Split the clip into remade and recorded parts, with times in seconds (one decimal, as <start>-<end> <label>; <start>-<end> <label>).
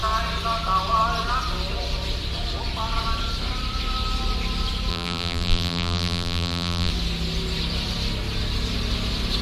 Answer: 0.0-4.9 recorded; 4.9-6.9 remade; 6.9-9.4 recorded